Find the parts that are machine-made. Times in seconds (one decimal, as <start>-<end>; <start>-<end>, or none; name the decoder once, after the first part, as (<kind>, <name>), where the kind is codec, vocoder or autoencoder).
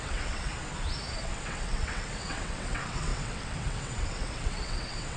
0.0-0.5 (vocoder, WaveNeXt); 1.2-5.2